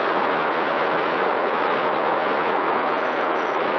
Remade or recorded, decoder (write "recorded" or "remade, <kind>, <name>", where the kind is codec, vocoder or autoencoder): remade, vocoder, Vocos